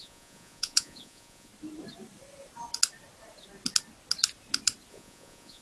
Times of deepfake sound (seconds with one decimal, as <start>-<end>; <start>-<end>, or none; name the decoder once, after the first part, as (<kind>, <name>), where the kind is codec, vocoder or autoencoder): 0.0-1.5 (vocoder, Vocos); 4.9-5.6